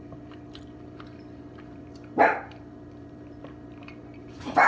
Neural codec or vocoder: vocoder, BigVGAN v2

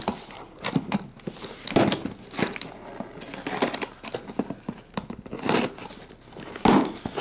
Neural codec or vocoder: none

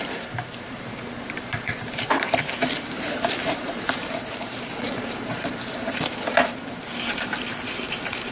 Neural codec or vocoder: vocoder, BigVGAN v2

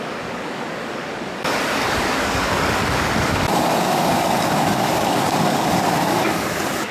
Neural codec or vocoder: codec, DAC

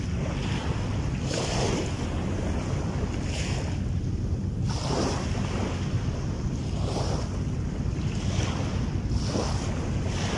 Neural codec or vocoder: none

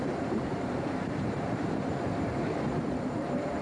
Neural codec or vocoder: vocoder, BigVGAN v2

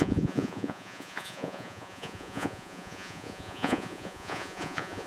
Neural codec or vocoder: vocoder, Vocos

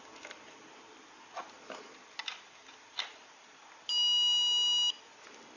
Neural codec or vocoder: none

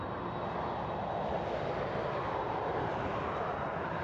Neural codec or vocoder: none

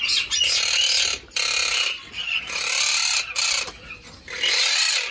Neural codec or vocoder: none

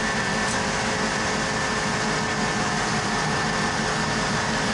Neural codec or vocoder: none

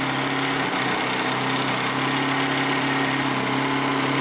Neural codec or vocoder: none